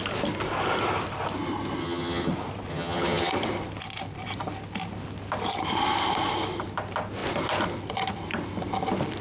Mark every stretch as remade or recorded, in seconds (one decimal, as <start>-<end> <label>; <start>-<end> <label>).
0.0-1.8 recorded; 1.8-2.3 remade; 2.3-2.7 recorded; 2.7-3.3 remade; 3.3-9.2 recorded